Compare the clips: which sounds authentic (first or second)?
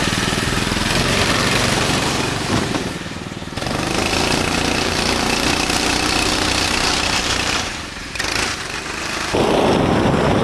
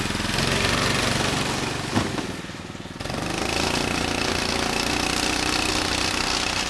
second